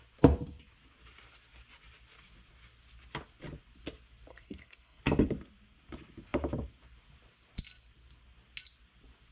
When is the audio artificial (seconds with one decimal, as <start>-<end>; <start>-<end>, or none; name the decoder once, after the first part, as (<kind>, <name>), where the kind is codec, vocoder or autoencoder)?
4.3-5.0 (codec, SNAC)